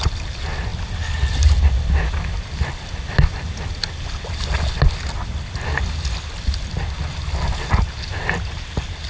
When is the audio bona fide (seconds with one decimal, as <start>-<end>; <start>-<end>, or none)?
0.0-9.1